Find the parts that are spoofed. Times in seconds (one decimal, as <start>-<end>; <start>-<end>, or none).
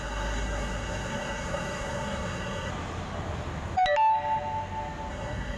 0.0-2.7; 5.1-5.6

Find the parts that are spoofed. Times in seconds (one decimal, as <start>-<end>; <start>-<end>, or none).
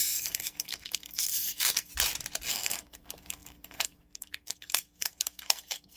0.0-1.9; 2.5-6.0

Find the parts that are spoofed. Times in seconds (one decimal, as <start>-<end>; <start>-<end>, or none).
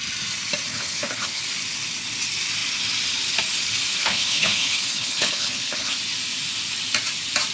0.7-1.4; 4.0-6.0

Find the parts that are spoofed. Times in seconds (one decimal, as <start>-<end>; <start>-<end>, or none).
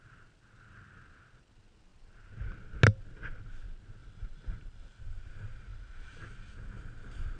4.0-5.0; 5.7-6.2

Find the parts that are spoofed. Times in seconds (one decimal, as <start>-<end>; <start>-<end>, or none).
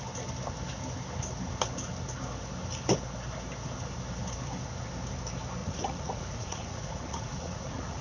5.6-8.0